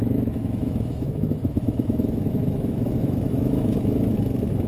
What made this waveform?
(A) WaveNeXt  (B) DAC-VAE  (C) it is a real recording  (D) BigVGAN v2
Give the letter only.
B